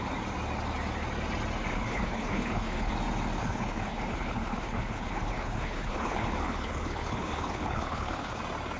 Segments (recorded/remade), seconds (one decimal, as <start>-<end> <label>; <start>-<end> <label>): 0.0-1.7 recorded; 1.7-2.9 remade; 2.9-3.4 recorded; 3.4-8.4 remade; 8.4-8.8 recorded